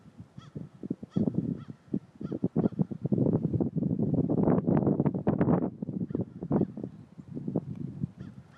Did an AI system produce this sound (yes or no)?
no